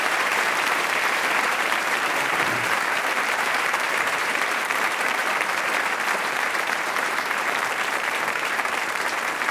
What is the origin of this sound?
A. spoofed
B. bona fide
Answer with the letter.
A